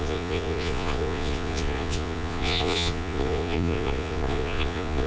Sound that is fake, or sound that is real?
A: fake